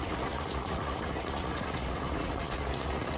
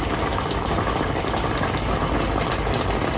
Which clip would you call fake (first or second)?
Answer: first